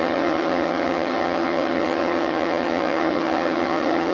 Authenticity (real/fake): fake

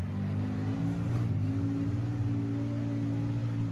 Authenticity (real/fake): real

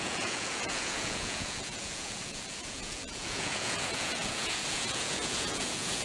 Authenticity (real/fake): fake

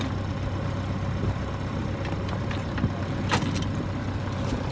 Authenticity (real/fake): real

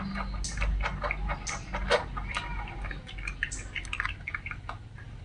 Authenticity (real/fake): real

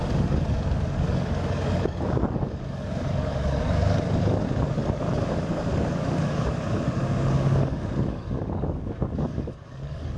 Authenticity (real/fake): fake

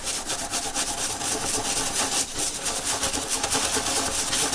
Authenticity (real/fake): real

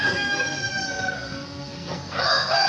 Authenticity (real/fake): fake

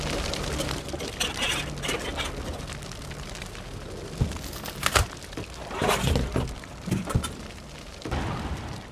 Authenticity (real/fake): real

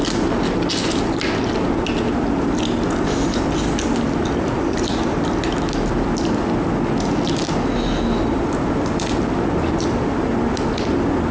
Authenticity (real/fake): real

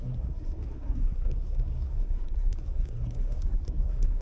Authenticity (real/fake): fake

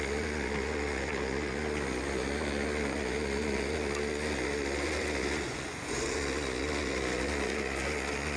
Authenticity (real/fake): fake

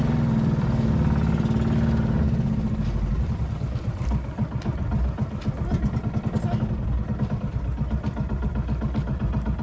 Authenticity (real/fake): real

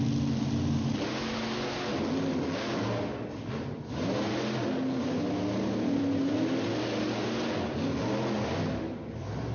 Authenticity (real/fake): real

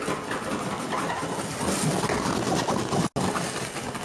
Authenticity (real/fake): real